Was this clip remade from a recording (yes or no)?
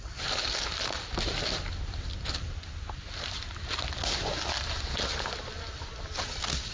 no